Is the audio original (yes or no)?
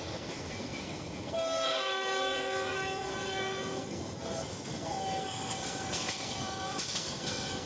no